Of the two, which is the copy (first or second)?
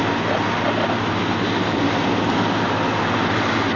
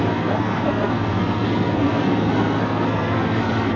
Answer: second